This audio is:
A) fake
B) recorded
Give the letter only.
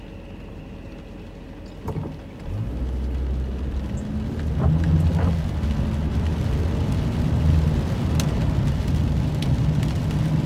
B